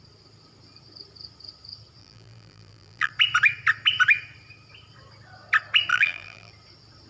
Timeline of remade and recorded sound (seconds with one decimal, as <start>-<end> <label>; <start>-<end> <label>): 0.0-2.0 recorded; 2.0-3.1 remade; 3.1-5.9 recorded; 5.9-6.5 remade; 6.5-7.1 recorded